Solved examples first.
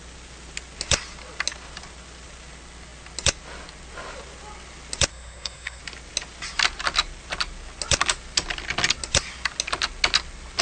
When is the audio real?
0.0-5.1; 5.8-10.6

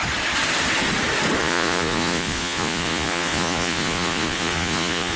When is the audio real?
0.0-1.4